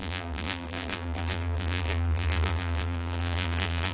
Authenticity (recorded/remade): remade